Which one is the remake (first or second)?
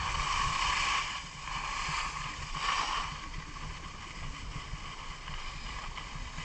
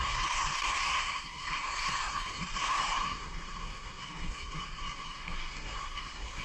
second